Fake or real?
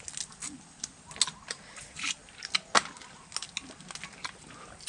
real